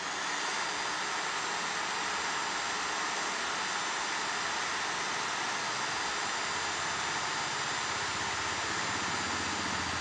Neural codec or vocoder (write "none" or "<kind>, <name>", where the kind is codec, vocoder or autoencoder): none